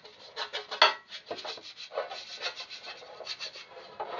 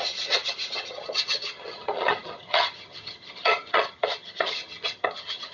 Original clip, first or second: first